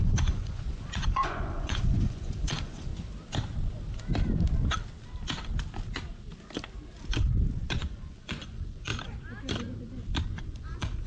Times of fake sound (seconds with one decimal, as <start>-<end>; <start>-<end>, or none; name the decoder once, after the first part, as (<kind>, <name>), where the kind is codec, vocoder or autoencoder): 0.0-2.9 (vocoder, Vocos); 7.7-8.9; 10.2-11.1